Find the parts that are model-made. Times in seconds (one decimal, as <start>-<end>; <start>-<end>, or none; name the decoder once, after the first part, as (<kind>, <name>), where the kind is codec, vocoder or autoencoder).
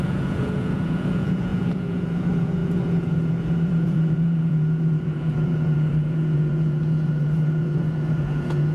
0.0-8.7 (vocoder, Vocos)